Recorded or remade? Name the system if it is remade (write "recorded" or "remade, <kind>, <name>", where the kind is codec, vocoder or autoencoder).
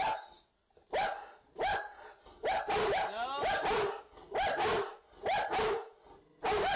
recorded